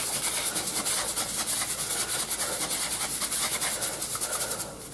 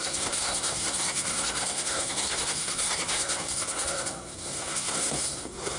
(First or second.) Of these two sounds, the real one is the first